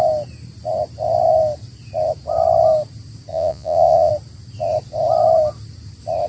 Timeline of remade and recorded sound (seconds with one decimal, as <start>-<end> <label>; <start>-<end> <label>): 0.0-3.3 recorded; 3.3-4.1 remade; 4.1-6.3 recorded